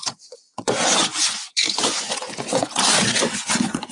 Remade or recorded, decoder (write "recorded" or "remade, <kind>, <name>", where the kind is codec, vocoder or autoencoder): remade, vocoder, Vocos